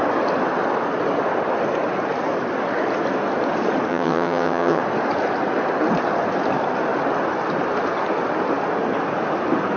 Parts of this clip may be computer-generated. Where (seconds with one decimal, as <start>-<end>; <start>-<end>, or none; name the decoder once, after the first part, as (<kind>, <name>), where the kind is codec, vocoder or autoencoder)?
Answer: 3.9-4.8 (vocoder, HiFi-GAN)